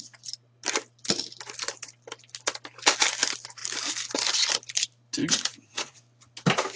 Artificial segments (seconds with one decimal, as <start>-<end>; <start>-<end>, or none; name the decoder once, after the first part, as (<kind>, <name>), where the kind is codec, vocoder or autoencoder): 5.2-6.0 (vocoder, Vocos)